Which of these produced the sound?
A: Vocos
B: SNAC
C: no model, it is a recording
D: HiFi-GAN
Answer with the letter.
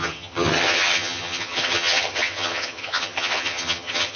D